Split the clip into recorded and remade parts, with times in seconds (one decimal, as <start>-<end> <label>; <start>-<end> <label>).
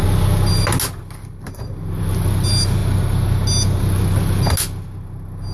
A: 0.0-5.5 recorded